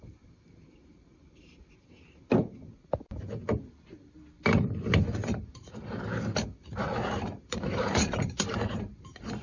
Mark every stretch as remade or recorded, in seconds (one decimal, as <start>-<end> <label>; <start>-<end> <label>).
0.0-6.6 recorded; 6.6-8.7 remade; 8.7-9.4 recorded